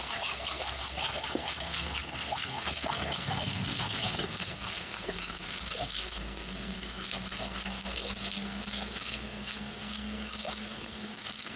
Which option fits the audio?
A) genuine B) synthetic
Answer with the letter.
B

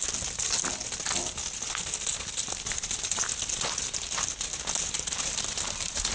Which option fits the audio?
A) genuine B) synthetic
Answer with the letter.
A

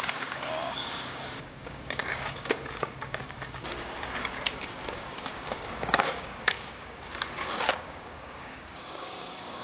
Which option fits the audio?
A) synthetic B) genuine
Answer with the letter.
A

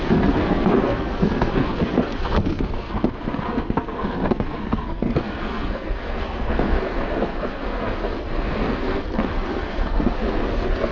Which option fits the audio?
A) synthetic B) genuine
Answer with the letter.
A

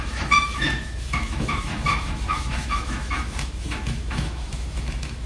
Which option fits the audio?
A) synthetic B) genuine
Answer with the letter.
A